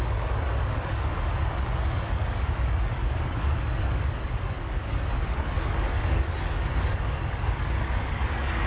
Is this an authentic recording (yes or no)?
no